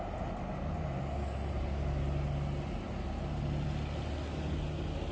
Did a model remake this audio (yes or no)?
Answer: no